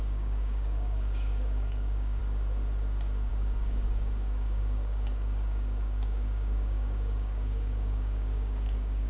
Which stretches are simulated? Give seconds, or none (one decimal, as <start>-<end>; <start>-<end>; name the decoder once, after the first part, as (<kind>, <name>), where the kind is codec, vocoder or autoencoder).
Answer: 0.0-2.2 (codec, DAC); 3.3-9.1